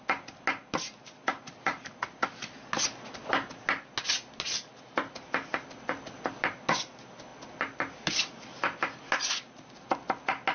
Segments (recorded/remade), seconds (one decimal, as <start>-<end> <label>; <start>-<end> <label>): 0.0-10.5 recorded